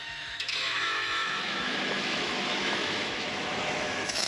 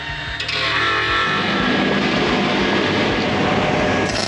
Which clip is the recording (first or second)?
second